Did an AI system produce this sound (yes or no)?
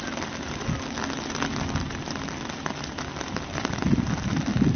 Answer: no